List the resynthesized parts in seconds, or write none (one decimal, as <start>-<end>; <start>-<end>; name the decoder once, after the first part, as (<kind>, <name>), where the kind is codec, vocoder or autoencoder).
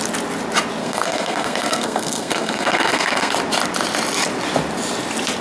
0.8-3.3 (codec, SNAC)